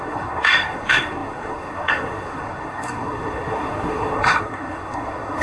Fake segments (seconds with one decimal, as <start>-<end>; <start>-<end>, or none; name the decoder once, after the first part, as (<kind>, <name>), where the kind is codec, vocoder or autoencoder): 0.0-5.4 (codec, SNAC)